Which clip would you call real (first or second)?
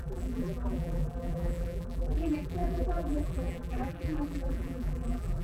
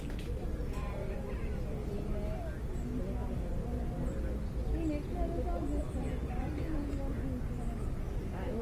second